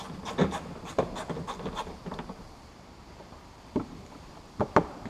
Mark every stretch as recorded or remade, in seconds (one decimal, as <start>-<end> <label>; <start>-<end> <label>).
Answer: 0.0-2.1 recorded; 2.1-4.3 remade; 4.3-5.1 recorded